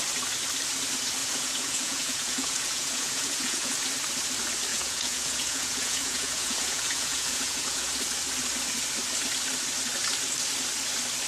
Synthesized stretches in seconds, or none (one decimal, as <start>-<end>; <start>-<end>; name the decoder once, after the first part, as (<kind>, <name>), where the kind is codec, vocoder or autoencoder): 1.2-3.7 (vocoder, Vocos); 4.7-7.9